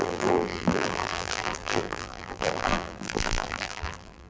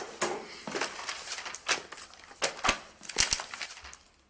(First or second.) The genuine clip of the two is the second